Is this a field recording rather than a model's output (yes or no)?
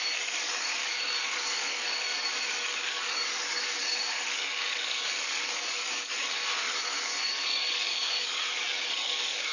no